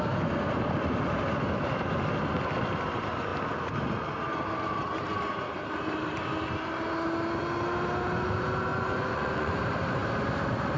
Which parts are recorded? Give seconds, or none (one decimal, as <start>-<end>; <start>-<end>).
0.0-8.7; 9.6-10.8